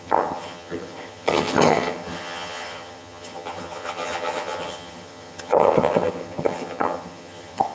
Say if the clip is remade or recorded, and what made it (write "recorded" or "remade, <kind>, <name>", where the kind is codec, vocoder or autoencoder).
remade, vocoder, HiFi-GAN